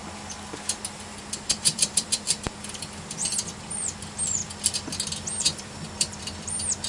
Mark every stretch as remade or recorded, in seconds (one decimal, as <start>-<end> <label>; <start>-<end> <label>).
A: 0.0-0.9 recorded; 0.9-4.4 remade; 4.4-5.2 recorded; 5.2-6.9 remade